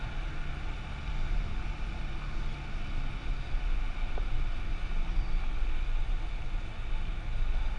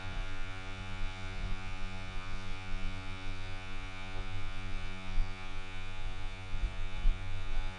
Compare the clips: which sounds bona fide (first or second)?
first